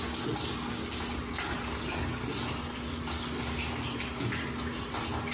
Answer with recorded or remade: recorded